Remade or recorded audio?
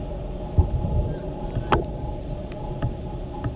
recorded